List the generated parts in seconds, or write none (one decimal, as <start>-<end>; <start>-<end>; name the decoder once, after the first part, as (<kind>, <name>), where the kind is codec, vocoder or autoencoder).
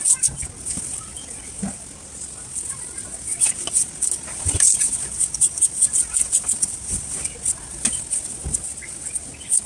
none